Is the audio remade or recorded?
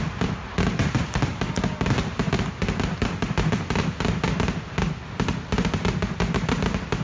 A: recorded